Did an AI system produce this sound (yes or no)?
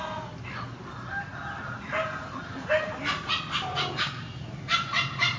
no